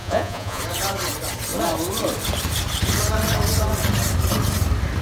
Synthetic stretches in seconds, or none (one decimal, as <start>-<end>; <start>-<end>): 0.0-0.6